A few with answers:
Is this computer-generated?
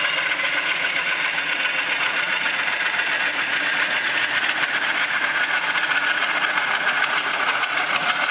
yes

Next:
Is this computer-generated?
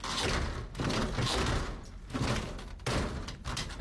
no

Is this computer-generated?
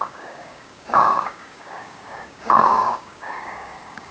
yes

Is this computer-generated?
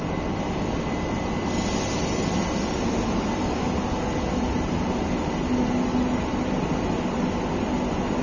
no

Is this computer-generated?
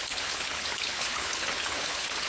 yes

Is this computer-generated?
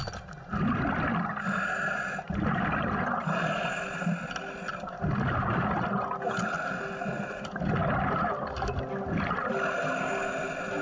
no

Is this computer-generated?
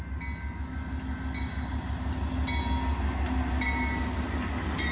no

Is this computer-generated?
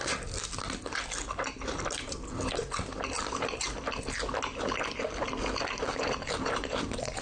no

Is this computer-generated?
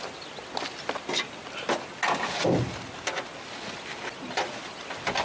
no